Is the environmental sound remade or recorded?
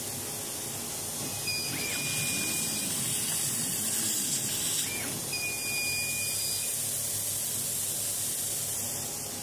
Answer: recorded